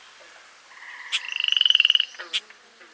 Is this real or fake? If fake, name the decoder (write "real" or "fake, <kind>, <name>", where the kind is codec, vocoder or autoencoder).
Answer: real